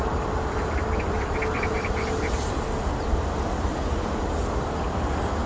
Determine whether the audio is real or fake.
real